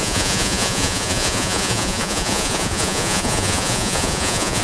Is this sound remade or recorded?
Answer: remade